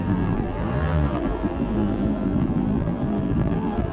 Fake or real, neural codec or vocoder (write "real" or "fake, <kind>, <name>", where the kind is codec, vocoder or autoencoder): fake, vocoder, BigVGAN v2